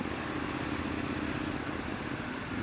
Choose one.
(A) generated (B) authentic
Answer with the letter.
B